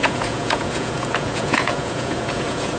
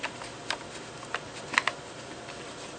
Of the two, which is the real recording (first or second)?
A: second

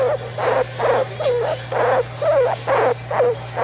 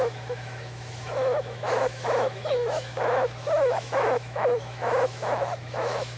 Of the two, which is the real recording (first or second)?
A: first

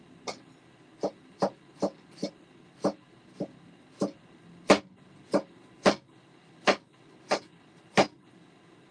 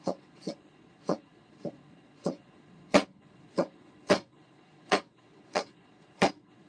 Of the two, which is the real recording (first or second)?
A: first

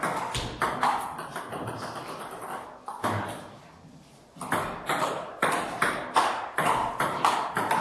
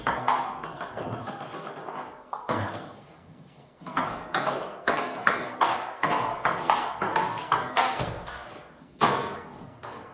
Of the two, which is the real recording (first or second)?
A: first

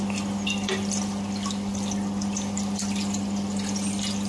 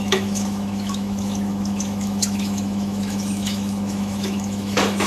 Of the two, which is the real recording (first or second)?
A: first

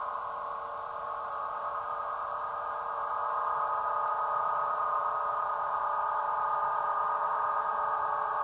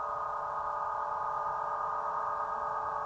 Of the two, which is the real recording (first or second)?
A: second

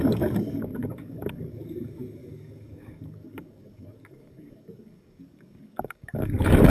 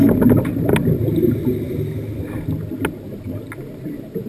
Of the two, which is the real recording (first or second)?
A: second